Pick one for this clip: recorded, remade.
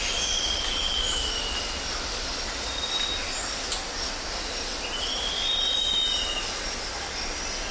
recorded